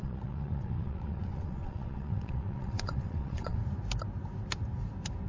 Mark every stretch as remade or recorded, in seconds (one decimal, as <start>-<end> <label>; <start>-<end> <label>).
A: 0.0-3.6 remade; 3.6-5.3 recorded